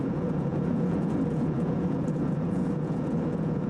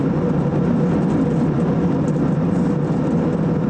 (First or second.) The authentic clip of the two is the second